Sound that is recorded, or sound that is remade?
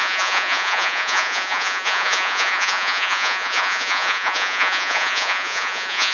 remade